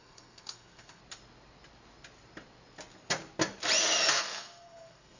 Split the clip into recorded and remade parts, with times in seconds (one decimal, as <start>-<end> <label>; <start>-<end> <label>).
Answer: 0.0-1.0 remade; 1.0-4.1 recorded; 4.1-5.2 remade